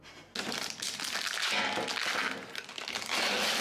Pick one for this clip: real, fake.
real